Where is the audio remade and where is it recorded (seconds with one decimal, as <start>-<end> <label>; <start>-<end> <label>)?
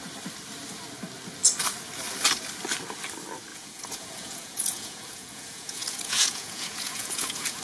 0.0-3.5 recorded; 3.5-7.6 remade